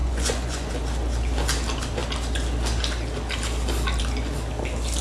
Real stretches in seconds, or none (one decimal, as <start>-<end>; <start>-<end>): 0.7-5.0